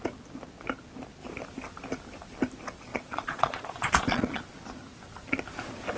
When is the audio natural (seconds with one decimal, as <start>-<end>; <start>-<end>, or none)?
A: 0.0-2.9; 4.4-6.0